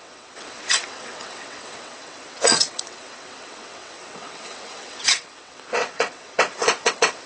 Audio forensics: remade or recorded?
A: remade